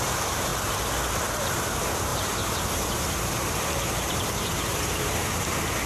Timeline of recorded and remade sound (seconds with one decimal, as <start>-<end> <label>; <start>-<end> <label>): 0.0-0.5 remade; 0.5-1.3 recorded; 1.3-5.9 remade